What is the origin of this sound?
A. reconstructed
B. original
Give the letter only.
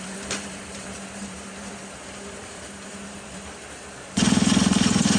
A